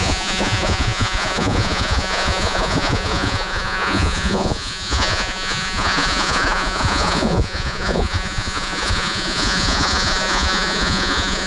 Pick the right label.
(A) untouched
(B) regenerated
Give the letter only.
B